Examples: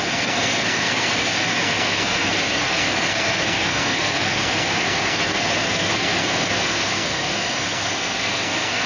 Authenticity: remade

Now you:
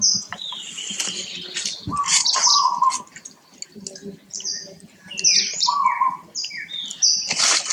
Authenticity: recorded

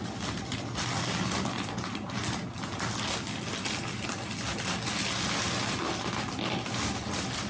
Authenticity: recorded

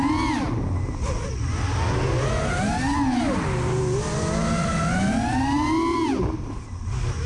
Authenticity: recorded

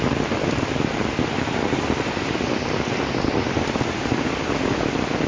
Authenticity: recorded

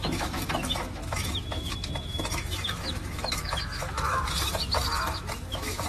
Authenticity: remade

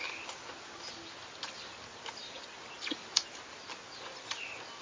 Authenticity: recorded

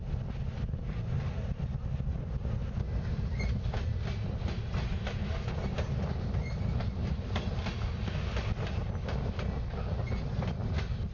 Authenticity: recorded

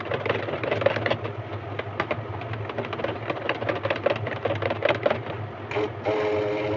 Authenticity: recorded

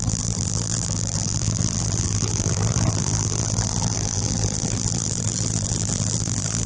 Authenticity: remade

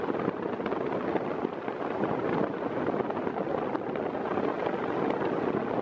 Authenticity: recorded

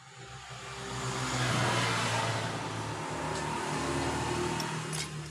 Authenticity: recorded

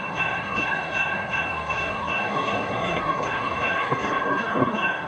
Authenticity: remade